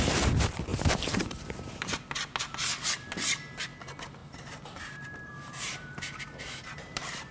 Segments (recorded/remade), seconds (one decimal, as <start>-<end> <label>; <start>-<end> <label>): 0.0-0.7 recorded; 0.7-2.0 remade; 2.0-4.2 recorded; 4.2-7.3 remade